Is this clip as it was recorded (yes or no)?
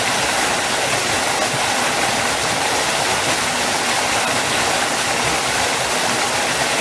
yes